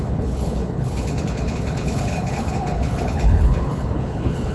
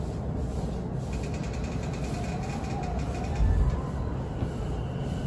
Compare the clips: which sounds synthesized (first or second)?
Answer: first